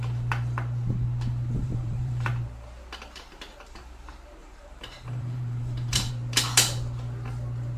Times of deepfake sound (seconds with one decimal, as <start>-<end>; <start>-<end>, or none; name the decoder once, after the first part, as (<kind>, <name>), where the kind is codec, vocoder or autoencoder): 1.6-2.3 (vocoder, BigVGAN v2); 4.4-6.1